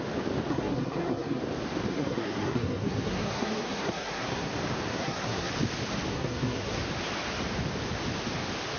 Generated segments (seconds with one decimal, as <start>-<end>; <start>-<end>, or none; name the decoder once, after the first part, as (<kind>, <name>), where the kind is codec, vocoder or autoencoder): 0.5-1.4 (codec, SNAC); 1.9-4.5; 4.9-5.5; 6.1-6.8